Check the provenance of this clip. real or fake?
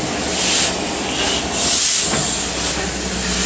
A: real